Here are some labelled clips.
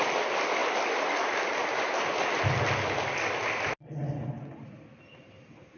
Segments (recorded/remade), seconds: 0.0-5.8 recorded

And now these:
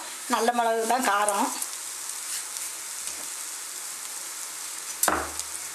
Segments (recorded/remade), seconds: 0.0-1.0 remade; 1.0-5.7 recorded

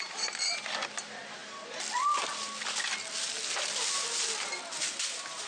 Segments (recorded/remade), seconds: 0.0-5.5 recorded

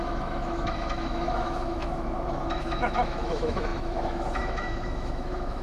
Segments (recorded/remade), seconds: 0.0-5.6 remade